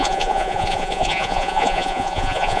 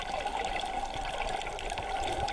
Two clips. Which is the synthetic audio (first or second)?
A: first